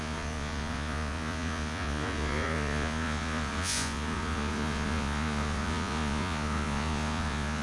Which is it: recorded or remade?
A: remade